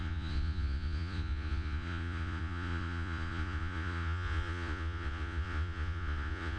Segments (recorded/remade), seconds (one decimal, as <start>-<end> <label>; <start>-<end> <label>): 0.0-6.6 remade